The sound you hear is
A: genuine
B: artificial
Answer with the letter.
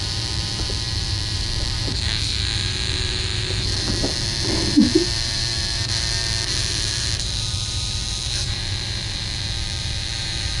B